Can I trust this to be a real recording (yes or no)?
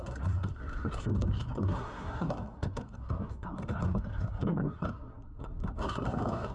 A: no